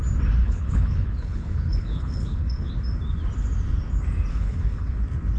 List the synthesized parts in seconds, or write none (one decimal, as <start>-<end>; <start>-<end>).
0.4-2.7; 4.3-5.0